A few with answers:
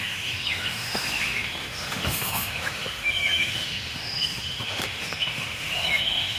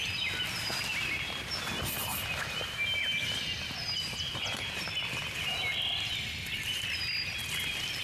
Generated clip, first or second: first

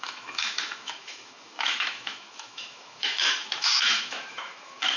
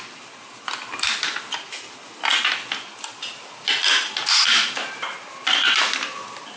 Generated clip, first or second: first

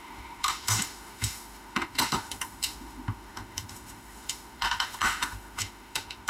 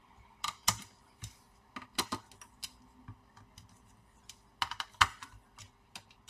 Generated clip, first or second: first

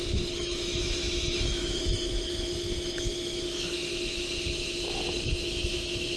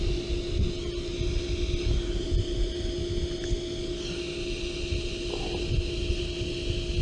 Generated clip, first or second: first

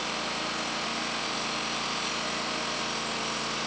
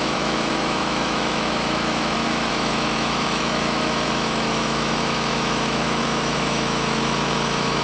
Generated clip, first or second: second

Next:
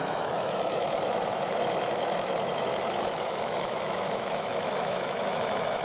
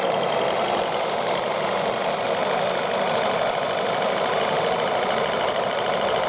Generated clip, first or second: first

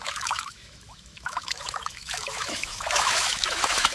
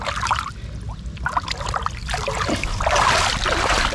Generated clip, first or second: first